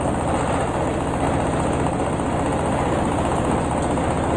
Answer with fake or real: real